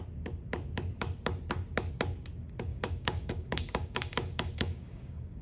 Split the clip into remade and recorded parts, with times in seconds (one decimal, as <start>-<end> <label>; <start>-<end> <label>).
0.0-2.7 recorded; 2.7-5.4 remade